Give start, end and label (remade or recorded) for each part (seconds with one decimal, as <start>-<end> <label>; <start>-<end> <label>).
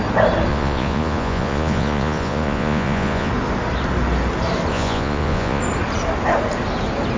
0.0-0.5 recorded; 0.5-3.3 remade; 3.3-4.7 recorded; 4.7-5.6 remade; 5.6-7.2 recorded